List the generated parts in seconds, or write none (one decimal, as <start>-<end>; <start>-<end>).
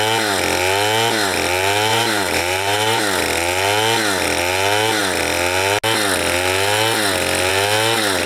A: 1.9-3.0